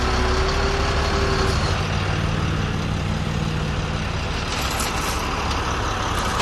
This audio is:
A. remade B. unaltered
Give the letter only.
B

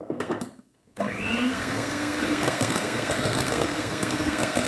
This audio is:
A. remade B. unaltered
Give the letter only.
A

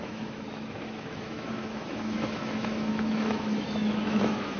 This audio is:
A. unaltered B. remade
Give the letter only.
B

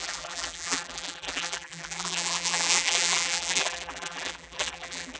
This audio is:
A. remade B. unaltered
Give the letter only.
A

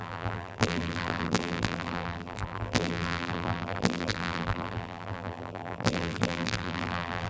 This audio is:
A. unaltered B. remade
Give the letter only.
B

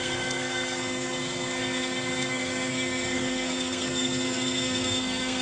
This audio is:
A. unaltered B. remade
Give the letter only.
B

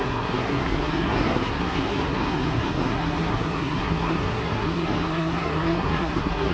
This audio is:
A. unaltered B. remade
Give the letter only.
B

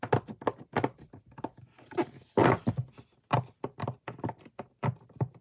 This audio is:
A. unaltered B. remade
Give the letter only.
A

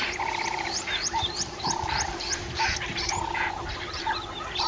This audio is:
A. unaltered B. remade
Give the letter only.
B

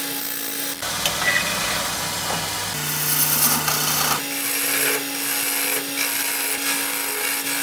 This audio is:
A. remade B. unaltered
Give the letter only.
B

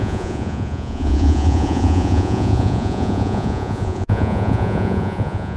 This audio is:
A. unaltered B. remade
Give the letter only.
B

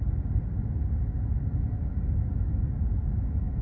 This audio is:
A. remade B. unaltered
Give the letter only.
B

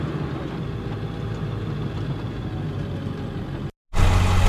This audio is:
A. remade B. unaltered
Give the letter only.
B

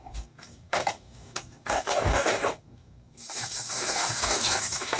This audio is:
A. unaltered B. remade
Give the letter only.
B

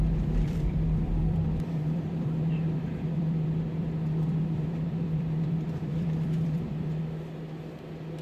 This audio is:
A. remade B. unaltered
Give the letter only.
A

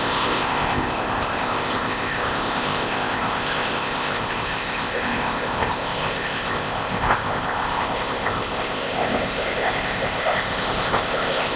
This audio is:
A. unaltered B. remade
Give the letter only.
B